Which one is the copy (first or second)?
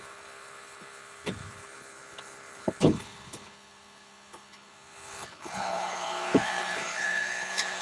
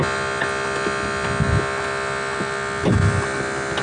first